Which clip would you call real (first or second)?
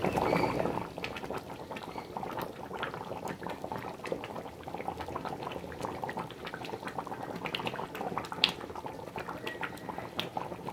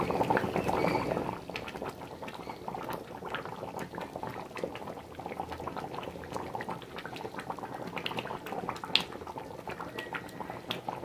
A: second